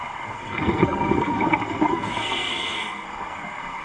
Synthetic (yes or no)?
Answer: yes